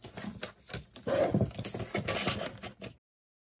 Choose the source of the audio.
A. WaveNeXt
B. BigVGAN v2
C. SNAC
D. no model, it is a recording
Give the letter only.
D